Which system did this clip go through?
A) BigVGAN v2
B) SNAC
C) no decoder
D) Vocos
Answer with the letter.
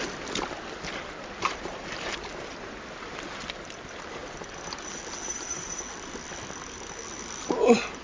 C